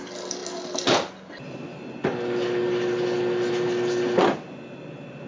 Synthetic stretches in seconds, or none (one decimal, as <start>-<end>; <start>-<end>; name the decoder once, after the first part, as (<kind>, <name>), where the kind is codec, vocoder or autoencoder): none